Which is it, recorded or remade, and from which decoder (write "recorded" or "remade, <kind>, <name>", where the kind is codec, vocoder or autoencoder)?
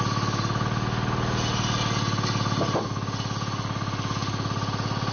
recorded